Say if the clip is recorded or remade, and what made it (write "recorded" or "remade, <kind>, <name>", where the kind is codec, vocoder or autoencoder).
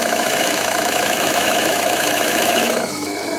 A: remade, autoencoder, DAC-VAE